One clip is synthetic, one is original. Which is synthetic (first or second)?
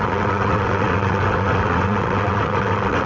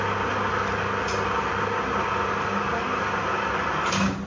first